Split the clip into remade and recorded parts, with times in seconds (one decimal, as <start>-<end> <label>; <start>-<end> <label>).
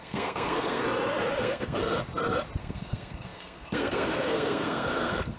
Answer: 0.0-0.8 remade; 0.8-1.4 recorded; 1.4-1.8 remade; 1.8-2.6 recorded; 2.6-5.4 remade